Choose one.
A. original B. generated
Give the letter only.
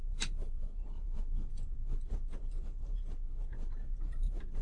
B